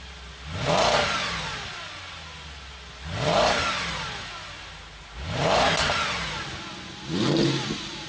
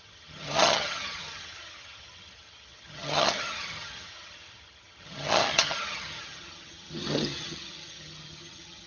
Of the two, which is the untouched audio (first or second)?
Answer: first